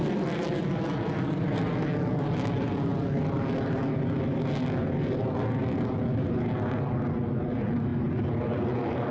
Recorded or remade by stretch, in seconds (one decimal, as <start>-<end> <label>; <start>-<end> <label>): 0.0-9.1 recorded